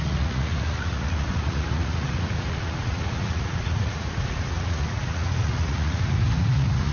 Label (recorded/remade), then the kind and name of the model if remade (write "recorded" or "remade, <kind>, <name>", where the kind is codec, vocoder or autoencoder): remade, vocoder, Vocos